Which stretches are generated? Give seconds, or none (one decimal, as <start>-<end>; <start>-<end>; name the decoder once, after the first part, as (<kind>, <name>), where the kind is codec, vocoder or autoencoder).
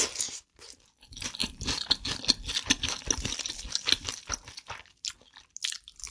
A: none